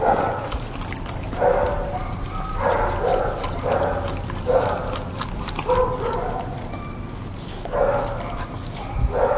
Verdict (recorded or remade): recorded